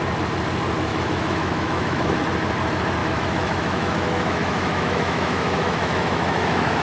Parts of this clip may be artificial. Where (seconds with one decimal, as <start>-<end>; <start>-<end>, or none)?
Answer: 0.9-2.2; 3.0-6.8